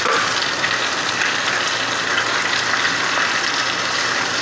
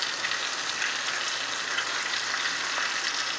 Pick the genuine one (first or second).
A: second